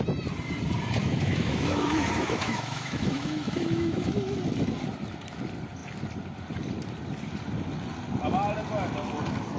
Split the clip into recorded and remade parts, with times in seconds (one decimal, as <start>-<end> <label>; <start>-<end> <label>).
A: 0.0-1.0 recorded; 1.0-4.4 remade; 4.4-9.6 recorded

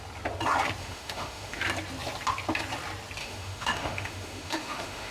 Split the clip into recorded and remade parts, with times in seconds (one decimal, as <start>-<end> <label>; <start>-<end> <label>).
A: 0.0-0.8 recorded; 0.8-1.6 remade; 1.6-3.2 recorded; 3.2-5.1 remade

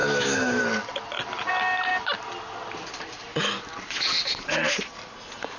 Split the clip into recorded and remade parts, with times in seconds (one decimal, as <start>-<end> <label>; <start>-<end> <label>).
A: 0.0-0.6 remade; 0.6-5.6 recorded

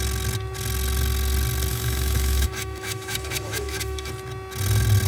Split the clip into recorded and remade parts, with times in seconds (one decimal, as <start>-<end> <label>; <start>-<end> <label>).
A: 0.0-1.7 recorded; 1.7-4.1 remade; 4.1-5.1 recorded